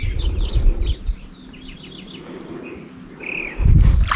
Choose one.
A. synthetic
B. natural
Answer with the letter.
B